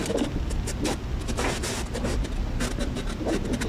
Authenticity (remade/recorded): recorded